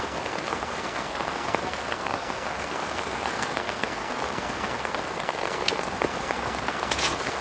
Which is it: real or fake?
fake